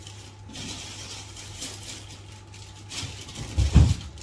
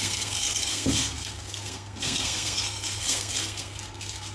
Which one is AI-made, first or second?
second